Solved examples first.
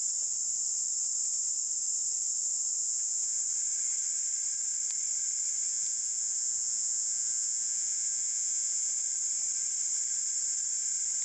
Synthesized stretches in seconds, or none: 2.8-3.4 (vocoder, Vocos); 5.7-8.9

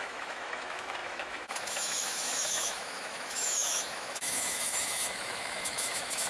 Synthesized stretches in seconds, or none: 0.0-6.3 (autoencoder, DAC-VAE)